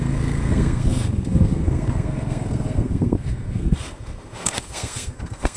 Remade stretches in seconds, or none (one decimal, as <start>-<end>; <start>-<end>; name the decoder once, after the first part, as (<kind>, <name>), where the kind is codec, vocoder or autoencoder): 0.0-5.6 (codec, SNAC)